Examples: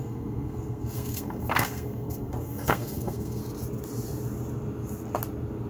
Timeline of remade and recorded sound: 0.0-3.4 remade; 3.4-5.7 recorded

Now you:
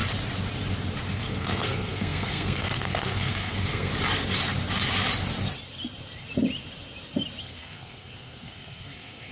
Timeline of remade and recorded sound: 0.0-1.1 recorded; 1.1-3.9 remade; 3.9-7.4 recorded; 7.4-9.3 remade

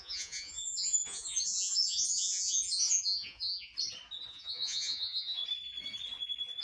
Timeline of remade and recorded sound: 0.0-3.7 remade; 3.7-4.3 recorded; 4.3-5.4 remade; 5.4-6.6 recorded

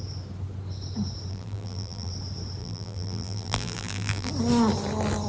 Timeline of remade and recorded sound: 0.0-1.3 recorded; 1.3-2.1 remade; 2.1-2.6 recorded; 2.6-4.3 remade; 4.3-5.3 recorded

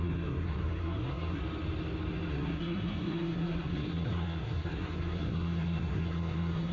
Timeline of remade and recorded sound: 0.0-1.4 remade; 1.4-2.3 recorded; 2.3-6.7 remade

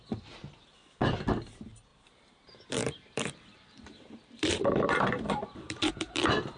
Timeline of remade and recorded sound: 0.0-1.9 recorded; 1.9-5.9 remade; 5.9-6.6 recorded

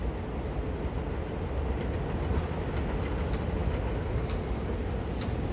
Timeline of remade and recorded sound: 0.0-5.5 recorded